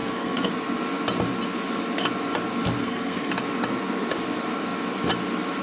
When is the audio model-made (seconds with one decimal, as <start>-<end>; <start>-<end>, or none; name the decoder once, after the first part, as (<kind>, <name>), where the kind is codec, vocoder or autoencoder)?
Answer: 0.0-0.5 (codec, SNAC); 2.8-3.3